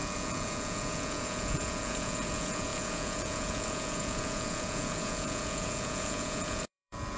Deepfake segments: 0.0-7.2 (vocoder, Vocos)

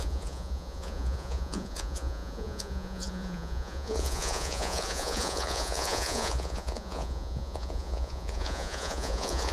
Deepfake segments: 0.0-9.5 (vocoder, Vocos)

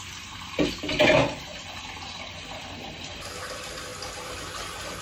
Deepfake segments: none

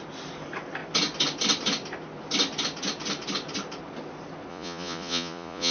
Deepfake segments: 4.5-5.7 (vocoder, Vocos)

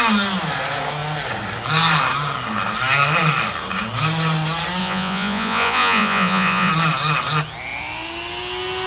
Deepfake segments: 4.8-6.7 (vocoder, Vocos)

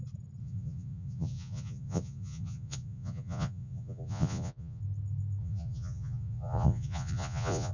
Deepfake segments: 0.4-4.8 (vocoder, Vocos); 5.4-7.7